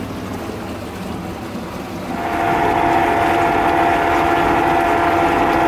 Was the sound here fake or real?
real